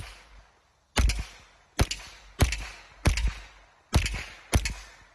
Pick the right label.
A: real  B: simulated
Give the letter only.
A